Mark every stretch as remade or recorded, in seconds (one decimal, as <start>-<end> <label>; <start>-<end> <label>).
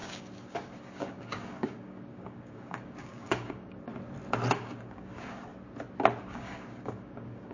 0.0-3.9 remade; 3.9-4.5 recorded; 4.5-5.5 remade; 5.5-6.2 recorded; 6.2-7.5 remade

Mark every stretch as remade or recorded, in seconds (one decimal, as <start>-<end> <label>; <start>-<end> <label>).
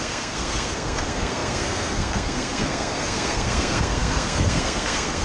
0.0-5.2 remade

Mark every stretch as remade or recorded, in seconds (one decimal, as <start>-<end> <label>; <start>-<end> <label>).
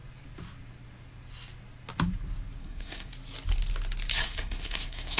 0.0-2.6 recorded; 2.6-3.1 remade; 3.1-4.1 recorded; 4.1-5.2 remade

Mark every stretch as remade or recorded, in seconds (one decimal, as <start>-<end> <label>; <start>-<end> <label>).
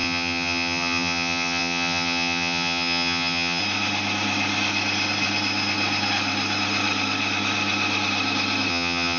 0.0-3.6 remade; 3.6-8.7 recorded; 8.7-9.2 remade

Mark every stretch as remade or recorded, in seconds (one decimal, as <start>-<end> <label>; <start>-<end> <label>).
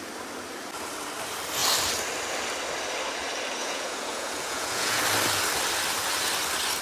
0.0-3.6 recorded; 3.6-5.0 remade; 5.0-6.8 recorded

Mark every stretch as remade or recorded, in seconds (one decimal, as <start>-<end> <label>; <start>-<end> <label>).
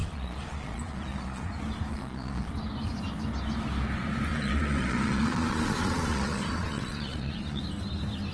0.0-1.5 remade; 1.5-1.9 recorded; 1.9-2.5 remade; 2.5-4.3 recorded; 4.3-7.6 remade; 7.6-8.3 recorded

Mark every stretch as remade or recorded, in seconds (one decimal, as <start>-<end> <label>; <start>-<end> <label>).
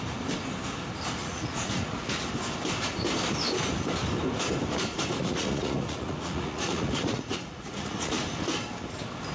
0.0-1.2 recorded; 1.2-2.2 remade; 2.2-5.2 recorded; 5.2-8.2 remade; 8.2-9.3 recorded